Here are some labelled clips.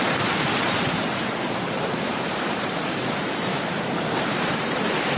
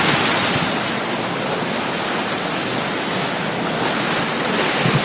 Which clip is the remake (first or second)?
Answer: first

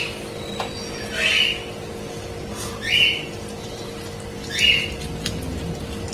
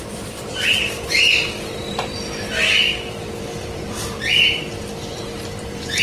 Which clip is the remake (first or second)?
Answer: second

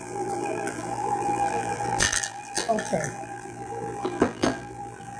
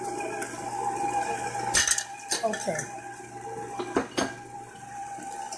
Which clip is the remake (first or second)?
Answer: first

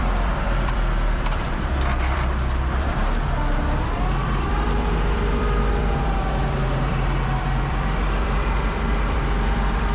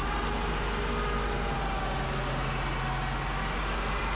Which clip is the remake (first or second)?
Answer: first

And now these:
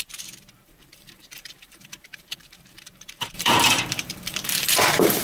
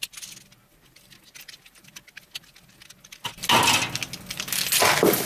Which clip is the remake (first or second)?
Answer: first